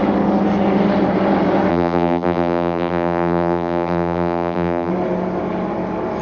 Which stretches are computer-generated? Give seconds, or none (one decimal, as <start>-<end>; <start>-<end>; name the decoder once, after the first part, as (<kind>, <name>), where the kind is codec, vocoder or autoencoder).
1.7-4.9 (vocoder, BigVGAN v2)